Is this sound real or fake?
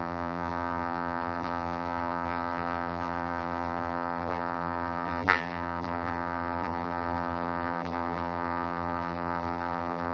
fake